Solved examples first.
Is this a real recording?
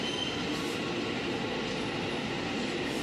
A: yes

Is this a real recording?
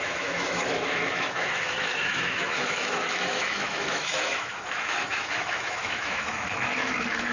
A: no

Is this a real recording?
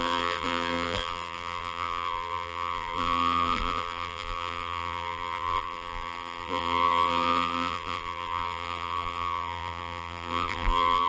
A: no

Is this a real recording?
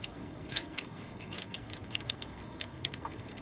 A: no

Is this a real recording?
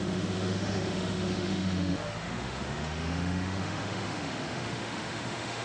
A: no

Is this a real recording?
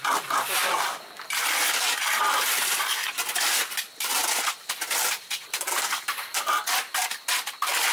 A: no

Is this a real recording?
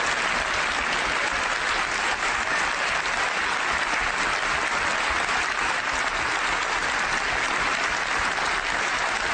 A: yes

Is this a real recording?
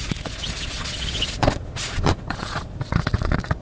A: no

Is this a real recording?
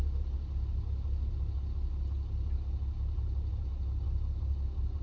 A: yes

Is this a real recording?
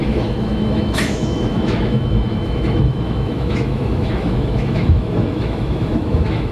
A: no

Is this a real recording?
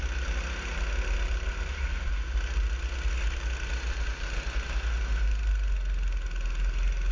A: yes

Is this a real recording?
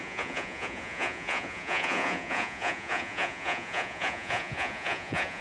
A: no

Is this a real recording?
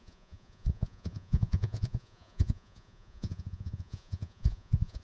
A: no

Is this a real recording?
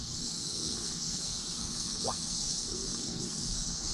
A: no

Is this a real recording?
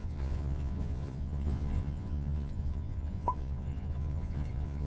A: no